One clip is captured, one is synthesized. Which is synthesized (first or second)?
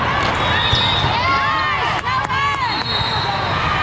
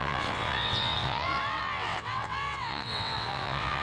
second